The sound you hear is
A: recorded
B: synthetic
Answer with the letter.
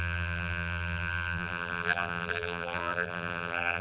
B